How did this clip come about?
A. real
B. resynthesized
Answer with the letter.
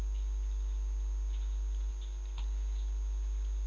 A